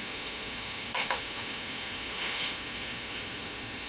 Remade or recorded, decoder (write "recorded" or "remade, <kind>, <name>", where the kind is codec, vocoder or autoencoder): remade, autoencoder, DAC-VAE